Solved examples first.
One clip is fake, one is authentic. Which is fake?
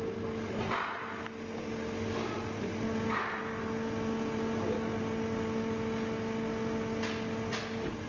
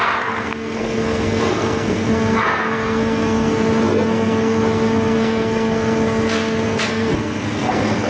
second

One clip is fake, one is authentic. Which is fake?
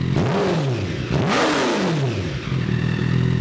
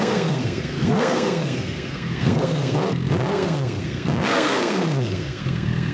second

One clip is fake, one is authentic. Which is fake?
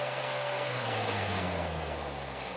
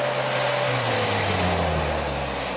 first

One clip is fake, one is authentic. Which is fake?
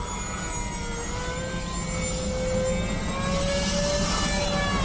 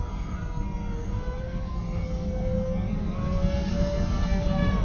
second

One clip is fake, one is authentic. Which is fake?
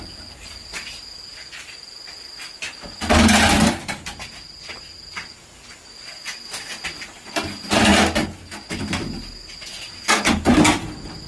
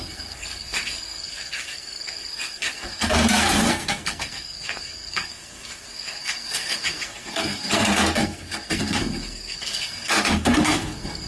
second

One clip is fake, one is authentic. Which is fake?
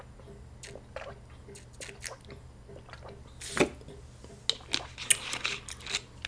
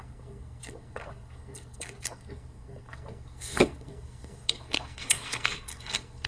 second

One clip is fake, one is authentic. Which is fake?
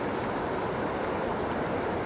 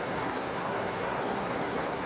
second